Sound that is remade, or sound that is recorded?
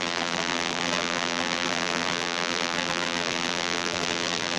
remade